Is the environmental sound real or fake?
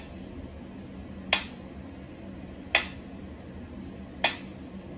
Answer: real